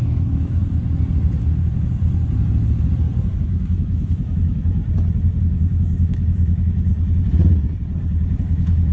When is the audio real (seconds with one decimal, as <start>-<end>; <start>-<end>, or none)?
0.6-3.4; 4.8-5.4; 6.9-8.5